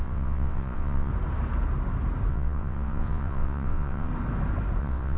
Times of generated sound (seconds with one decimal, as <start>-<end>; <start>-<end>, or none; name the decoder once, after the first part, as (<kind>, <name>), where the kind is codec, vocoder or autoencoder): 0.0-1.1 (vocoder, WaveNeXt); 2.3-4.1; 4.8-5.2

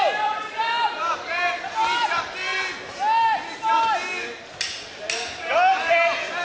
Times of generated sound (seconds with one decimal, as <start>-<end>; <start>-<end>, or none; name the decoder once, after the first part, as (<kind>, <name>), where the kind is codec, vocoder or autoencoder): none

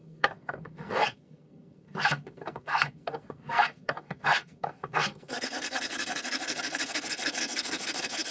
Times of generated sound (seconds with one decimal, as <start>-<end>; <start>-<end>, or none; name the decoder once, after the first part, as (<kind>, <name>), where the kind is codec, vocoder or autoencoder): 0.0-8.3 (codec, SNAC)

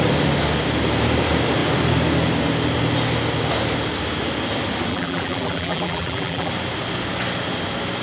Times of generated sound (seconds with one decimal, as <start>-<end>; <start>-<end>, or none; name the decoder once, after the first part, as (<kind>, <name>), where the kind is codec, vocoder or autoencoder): 4.9-6.5 (vocoder, BigVGAN v2)

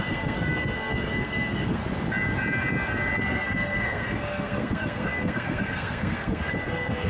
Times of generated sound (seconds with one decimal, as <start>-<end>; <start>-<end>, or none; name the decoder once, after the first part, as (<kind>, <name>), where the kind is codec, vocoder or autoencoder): 0.0-1.8 (codec, SNAC); 3.2-7.1

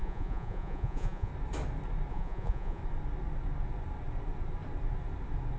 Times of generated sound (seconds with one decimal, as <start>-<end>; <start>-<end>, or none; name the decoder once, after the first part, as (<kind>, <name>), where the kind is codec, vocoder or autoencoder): 0.0-1.3 (vocoder, Vocos); 2.1-2.8